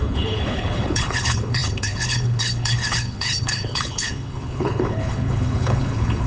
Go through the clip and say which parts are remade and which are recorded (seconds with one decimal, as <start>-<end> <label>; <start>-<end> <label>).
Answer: 0.0-6.3 remade